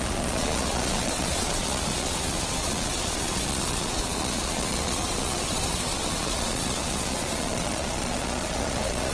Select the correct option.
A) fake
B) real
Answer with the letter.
A